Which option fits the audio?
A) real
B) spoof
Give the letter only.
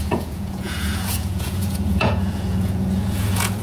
B